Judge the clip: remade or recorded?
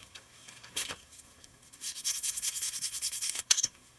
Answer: remade